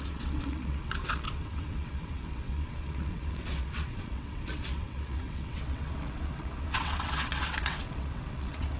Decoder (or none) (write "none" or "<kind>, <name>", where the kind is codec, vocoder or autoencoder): vocoder, WaveNeXt